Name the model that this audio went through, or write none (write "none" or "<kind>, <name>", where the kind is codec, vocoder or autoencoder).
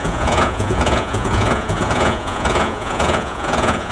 vocoder, Vocos